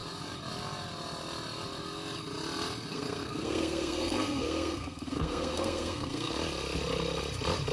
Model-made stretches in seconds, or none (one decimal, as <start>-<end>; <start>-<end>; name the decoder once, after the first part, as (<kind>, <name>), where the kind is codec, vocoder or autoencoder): 2.9-6.3 (codec, SNAC)

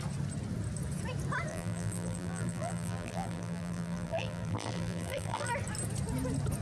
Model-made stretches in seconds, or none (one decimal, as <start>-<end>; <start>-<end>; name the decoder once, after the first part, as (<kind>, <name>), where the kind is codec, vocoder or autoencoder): 1.5-5.5 (vocoder, BigVGAN v2)

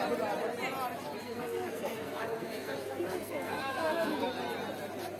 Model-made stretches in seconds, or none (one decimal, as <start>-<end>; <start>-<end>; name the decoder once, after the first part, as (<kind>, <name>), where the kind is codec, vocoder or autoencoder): 1.2-4.3 (codec, SNAC)

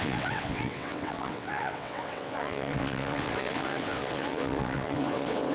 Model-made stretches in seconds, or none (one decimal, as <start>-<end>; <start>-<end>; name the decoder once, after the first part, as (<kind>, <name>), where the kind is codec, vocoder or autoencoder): 0.0-5.5 (vocoder, WaveNeXt)